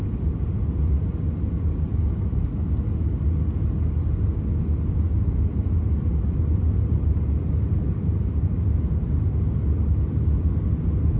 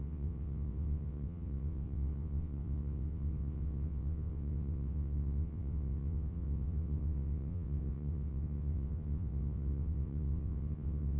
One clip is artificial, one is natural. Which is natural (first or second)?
first